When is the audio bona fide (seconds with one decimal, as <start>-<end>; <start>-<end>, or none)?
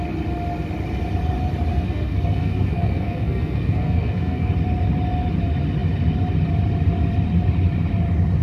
0.0-1.7; 4.5-8.4